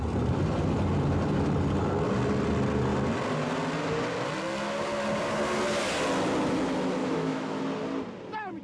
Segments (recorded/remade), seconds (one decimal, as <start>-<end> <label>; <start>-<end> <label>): 0.0-7.0 recorded; 7.0-7.6 remade; 7.6-8.6 recorded

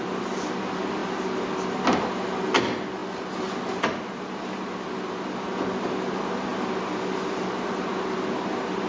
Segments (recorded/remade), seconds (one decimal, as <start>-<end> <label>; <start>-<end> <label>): 0.0-8.9 recorded

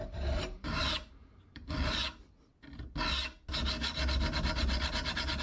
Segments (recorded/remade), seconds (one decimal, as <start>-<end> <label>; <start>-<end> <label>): 0.0-1.7 remade; 1.7-5.4 recorded

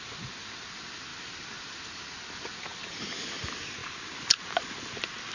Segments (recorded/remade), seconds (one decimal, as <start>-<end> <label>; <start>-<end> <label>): 0.0-5.3 recorded

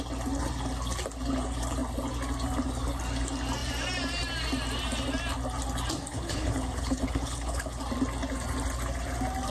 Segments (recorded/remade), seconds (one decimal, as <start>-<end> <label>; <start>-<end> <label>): 0.0-6.1 recorded; 6.1-7.8 remade; 7.8-9.5 recorded

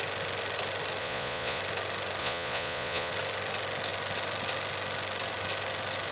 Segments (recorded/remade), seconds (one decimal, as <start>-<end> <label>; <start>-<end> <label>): 0.0-1.0 recorded; 1.0-1.6 remade; 1.6-2.2 recorded; 2.2-3.1 remade; 3.1-6.1 recorded